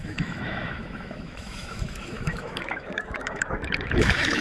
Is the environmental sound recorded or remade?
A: remade